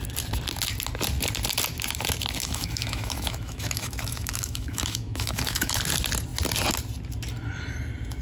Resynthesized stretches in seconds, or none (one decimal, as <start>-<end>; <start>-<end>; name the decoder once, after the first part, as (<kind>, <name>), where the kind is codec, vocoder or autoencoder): 2.4-5.8 (autoencoder, DAC-VAE)